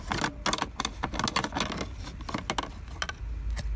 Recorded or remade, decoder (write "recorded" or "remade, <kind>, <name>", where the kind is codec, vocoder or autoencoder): recorded